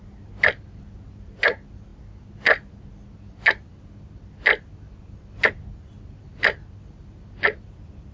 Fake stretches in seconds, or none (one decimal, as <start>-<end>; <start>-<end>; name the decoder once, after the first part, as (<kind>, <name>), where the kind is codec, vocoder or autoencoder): none